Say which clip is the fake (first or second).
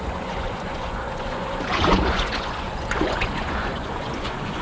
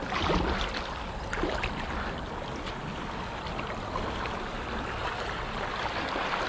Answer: first